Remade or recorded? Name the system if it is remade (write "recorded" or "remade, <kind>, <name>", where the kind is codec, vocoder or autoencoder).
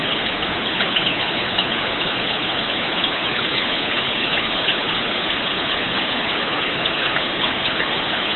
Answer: remade, codec, HILCodec